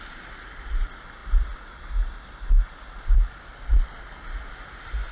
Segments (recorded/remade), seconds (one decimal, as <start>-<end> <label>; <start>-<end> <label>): 0.0-5.1 recorded